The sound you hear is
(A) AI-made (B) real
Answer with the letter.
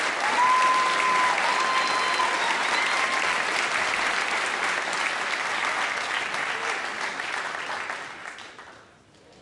B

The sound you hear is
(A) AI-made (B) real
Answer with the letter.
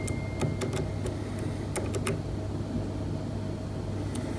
B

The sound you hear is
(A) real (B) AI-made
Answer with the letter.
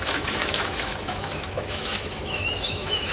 B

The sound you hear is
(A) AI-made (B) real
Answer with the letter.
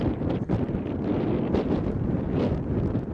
B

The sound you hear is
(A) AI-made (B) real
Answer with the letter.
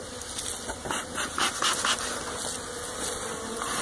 B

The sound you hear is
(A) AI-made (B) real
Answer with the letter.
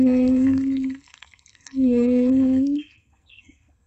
A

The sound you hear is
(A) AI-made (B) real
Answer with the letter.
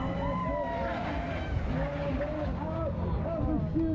B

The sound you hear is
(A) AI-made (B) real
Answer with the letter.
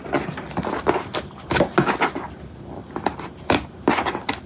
B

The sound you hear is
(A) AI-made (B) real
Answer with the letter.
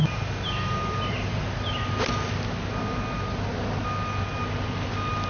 B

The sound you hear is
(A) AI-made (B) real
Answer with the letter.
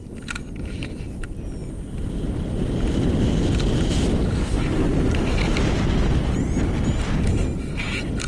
B